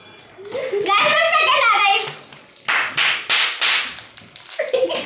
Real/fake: real